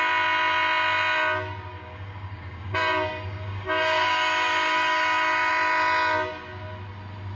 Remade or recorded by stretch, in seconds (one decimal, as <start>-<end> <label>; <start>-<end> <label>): 0.0-1.7 recorded; 1.7-5.5 remade; 5.5-7.4 recorded